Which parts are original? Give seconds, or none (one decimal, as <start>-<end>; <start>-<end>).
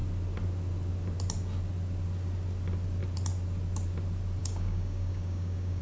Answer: 0.0-4.4